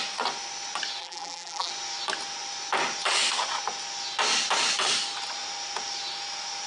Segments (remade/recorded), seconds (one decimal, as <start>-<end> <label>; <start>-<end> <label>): 0.0-1.0 recorded; 1.0-1.7 remade; 1.7-6.7 recorded